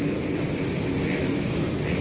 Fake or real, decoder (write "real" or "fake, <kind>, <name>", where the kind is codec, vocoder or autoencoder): real